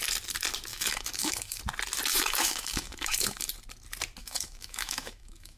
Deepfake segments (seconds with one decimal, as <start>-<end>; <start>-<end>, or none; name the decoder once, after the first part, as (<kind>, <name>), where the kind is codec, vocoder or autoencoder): 0.7-1.6 (autoencoder, DAC-VAE); 2.1-3.5; 4.2-5.6

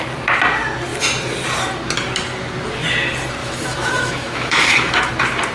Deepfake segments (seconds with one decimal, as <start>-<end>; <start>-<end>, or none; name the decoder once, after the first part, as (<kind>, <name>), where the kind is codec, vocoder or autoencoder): 3.4-5.1 (autoencoder, DAC-VAE)

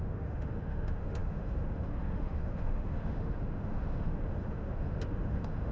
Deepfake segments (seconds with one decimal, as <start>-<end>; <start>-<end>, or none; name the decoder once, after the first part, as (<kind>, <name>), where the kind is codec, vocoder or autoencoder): 0.0-5.7 (autoencoder, DAC-VAE)

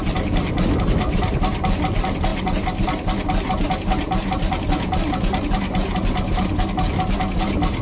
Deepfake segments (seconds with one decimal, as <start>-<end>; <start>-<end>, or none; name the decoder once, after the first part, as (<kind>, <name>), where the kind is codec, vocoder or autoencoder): none

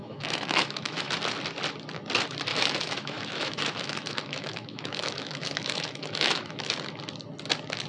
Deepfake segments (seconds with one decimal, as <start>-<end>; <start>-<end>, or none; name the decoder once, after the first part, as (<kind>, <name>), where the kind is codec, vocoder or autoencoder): 0.0-1.1 (autoencoder, DAC-VAE); 2.5-6.7

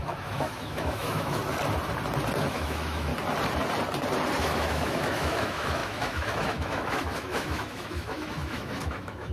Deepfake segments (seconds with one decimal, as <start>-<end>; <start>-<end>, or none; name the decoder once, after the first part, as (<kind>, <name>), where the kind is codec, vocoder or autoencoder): 0.0-1.4 (autoencoder, DAC-VAE); 2.5-3.1; 4.4-9.3

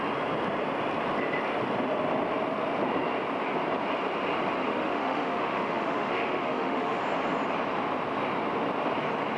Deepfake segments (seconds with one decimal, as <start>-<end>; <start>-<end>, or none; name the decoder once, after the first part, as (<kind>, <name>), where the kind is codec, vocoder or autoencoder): 4.7-7.0 (autoencoder, DAC-VAE)

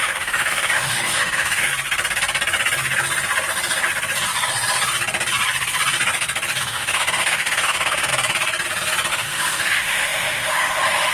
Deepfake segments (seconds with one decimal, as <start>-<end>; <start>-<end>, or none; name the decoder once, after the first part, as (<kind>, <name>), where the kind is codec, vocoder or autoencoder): 0.0-1.7 (autoencoder, DAC-VAE); 6.6-8.1; 9.1-11.1